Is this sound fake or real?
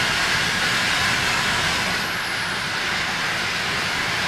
real